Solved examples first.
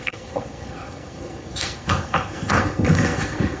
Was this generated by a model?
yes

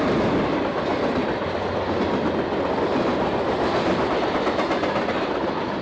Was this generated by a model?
no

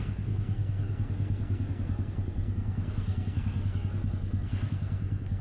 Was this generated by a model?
yes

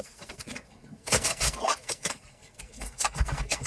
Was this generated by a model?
yes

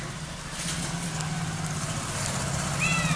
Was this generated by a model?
no